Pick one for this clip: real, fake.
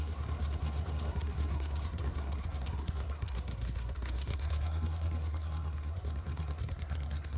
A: fake